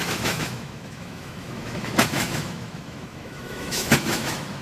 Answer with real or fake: fake